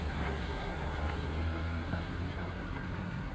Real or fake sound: fake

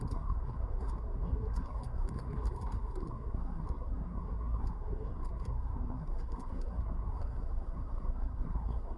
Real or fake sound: fake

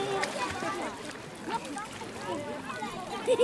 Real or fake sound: real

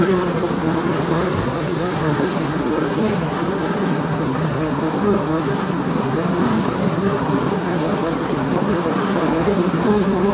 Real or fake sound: fake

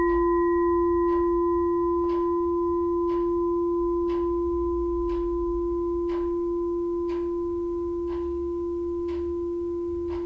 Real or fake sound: real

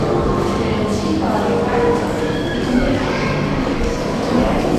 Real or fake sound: fake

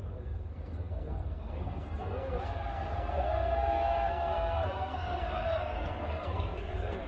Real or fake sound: fake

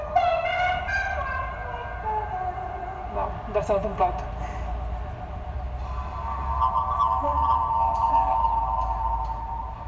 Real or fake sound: real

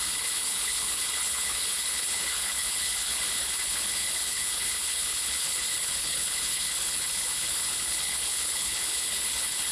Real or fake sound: fake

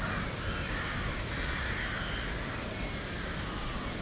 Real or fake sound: real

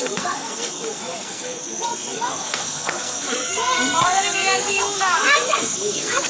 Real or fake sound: fake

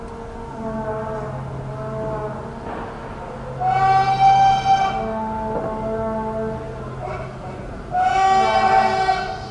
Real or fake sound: real